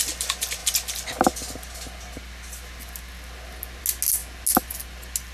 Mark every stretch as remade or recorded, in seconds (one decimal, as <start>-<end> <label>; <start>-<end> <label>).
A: 0.0-5.3 recorded